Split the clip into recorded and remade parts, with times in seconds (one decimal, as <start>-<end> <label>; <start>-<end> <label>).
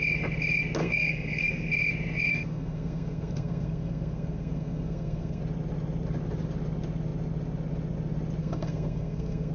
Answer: 0.0-0.8 recorded; 0.8-1.7 remade; 1.7-2.3 recorded; 2.3-5.4 remade; 5.4-8.4 recorded; 8.4-9.5 remade